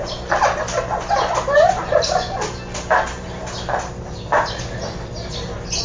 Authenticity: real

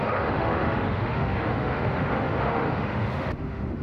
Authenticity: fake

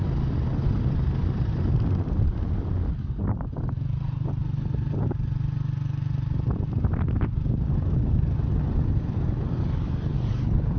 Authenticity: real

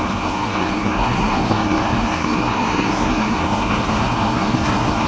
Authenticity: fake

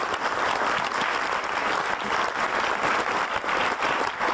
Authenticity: real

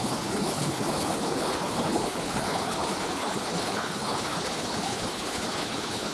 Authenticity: fake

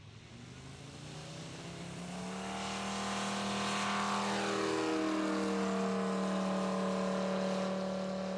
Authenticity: real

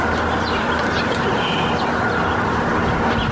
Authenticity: real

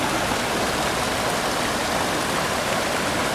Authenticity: real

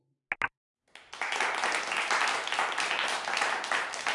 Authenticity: real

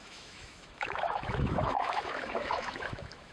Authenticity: fake